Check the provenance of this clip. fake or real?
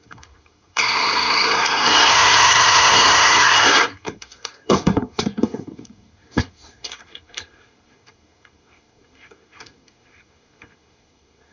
fake